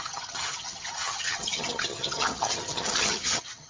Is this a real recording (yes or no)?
no